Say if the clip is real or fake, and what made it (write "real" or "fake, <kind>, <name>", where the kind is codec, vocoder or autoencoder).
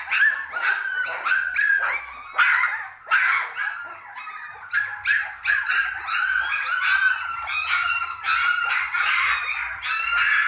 real